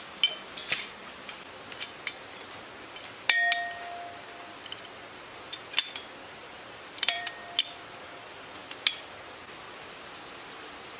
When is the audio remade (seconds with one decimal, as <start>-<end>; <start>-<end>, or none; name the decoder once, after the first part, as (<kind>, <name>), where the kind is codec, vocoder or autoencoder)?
6.4-7.3 (vocoder, BigVGAN v2)